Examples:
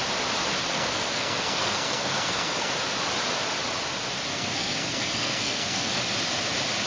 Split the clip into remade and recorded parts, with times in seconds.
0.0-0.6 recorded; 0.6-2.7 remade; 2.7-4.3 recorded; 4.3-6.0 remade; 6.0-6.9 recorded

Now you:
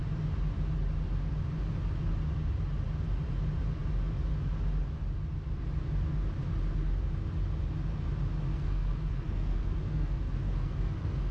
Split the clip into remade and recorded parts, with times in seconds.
0.0-8.5 recorded; 8.5-11.3 remade

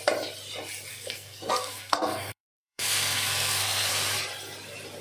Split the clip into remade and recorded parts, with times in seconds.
0.0-0.9 recorded; 0.9-3.9 remade; 3.9-5.0 recorded

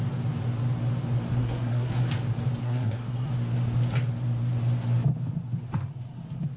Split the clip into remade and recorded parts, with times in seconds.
0.0-1.4 recorded; 1.4-2.0 remade; 2.0-2.6 recorded; 2.6-3.3 remade; 3.3-6.6 recorded

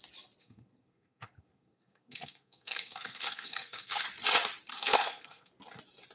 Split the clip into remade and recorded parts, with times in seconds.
0.0-0.4 recorded; 0.4-4.1 remade; 4.1-4.7 recorded; 4.7-5.5 remade; 5.5-6.1 recorded